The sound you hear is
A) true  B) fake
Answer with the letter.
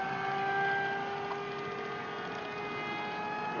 A